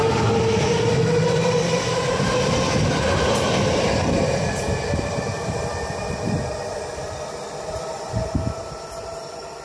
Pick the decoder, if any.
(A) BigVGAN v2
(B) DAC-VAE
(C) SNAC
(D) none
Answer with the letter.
A